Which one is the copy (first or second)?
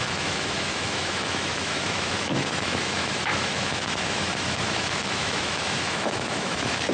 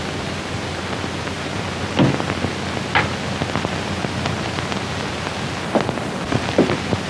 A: first